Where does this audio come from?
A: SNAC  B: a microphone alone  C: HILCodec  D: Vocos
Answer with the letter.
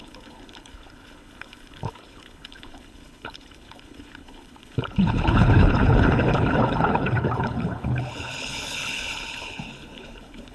C